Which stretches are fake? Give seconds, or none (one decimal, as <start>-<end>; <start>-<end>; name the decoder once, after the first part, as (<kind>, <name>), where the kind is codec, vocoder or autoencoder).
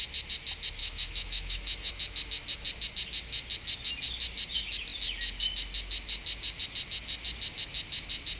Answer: 0.8-1.9 (autoencoder, DAC-VAE)